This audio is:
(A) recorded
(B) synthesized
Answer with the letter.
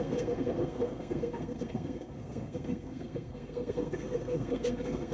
B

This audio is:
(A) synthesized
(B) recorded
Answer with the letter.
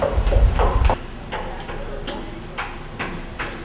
B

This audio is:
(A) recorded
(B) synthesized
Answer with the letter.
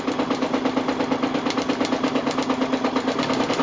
A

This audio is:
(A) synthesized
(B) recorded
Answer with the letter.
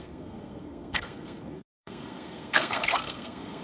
A